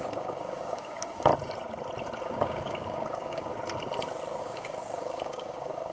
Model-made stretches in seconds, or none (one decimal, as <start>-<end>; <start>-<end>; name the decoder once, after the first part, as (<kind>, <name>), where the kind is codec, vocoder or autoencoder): 0.0-1.3 (codec, DAC); 2.2-3.5; 4.4-5.9